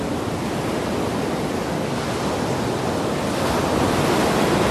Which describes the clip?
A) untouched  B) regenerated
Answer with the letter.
A